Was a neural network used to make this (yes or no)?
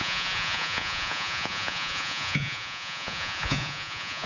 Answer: yes